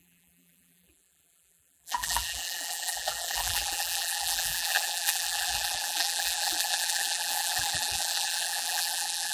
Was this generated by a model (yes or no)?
yes